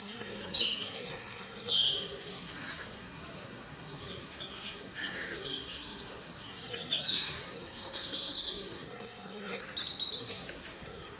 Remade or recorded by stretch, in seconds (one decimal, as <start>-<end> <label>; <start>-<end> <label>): 0.0-9.6 remade; 9.6-10.2 recorded; 10.2-11.2 remade